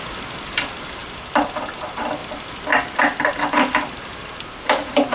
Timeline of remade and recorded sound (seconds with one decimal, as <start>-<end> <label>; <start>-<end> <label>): 0.0-2.2 remade; 2.2-3.0 recorded; 3.0-5.1 remade